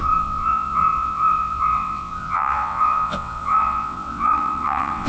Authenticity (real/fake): fake